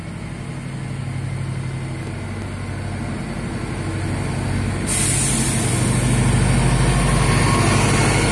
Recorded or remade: recorded